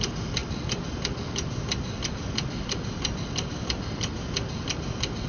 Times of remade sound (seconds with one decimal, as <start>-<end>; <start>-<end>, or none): none